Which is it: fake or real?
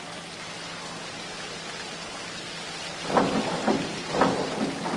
real